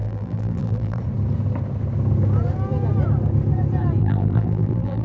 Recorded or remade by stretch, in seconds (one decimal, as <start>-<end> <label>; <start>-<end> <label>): 0.0-1.0 remade; 1.0-4.0 recorded; 4.0-5.0 remade